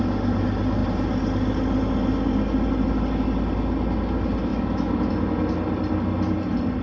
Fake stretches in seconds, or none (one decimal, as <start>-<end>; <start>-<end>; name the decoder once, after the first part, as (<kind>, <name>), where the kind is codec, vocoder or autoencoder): 4.5-5.1 (autoencoder, DAC-VAE)